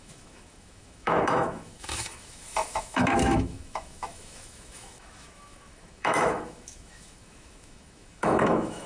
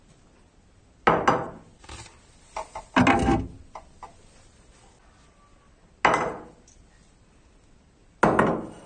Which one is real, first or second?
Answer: second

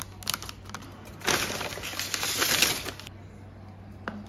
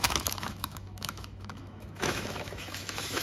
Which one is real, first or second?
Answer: first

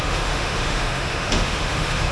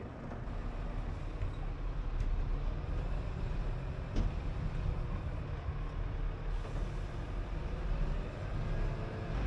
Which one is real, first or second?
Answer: second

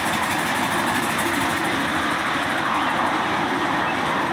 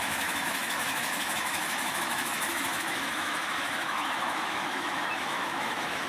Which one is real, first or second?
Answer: first